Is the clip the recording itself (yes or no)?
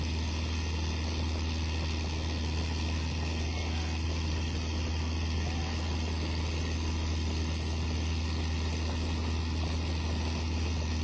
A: yes